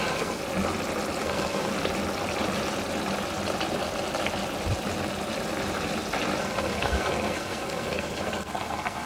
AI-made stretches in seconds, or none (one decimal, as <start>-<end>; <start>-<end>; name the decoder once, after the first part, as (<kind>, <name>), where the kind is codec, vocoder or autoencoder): 0.0-0.4 (codec, SNAC); 1.2-1.7; 6.4-9.1

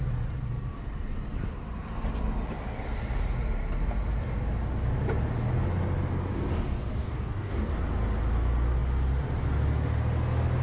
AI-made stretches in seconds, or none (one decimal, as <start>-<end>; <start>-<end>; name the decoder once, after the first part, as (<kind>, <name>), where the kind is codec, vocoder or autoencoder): 7.0-7.7 (codec, DAC)

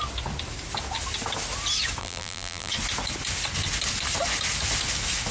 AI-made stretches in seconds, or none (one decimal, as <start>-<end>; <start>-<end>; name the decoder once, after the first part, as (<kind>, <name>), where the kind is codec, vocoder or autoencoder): 2.0-2.7 (vocoder, BigVGAN v2)

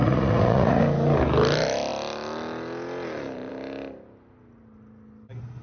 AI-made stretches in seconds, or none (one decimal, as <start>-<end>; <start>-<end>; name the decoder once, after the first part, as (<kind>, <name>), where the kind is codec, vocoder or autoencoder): 0.0-0.8 (vocoder, Vocos)

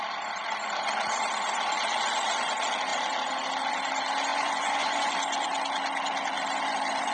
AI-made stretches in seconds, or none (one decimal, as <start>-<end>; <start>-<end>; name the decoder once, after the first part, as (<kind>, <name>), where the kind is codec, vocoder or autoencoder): 4.3-5.1 (vocoder, Vocos)